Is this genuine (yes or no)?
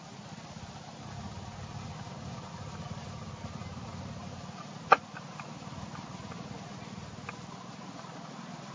yes